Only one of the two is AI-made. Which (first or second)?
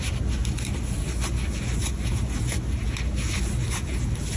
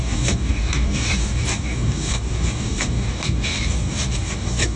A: second